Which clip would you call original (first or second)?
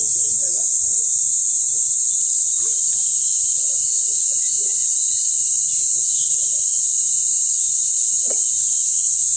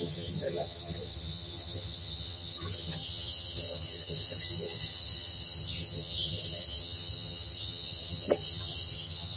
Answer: first